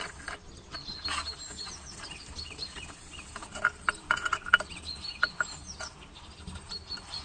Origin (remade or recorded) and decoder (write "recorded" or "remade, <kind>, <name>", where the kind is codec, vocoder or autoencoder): recorded